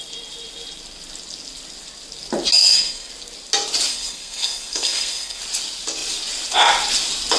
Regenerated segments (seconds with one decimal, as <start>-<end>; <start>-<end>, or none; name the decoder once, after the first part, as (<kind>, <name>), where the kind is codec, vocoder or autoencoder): 2.6-3.1 (codec, SNAC); 3.9-5.4